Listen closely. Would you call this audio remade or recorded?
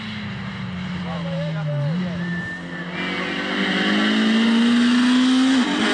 recorded